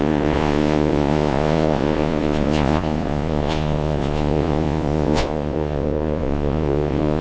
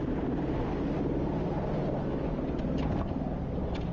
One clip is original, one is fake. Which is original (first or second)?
second